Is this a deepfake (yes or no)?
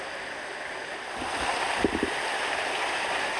no